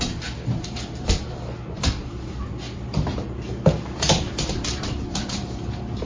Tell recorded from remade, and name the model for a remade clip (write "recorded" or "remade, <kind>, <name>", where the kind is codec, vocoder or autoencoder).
remade, vocoder, BigVGAN v2